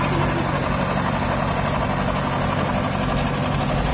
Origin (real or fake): real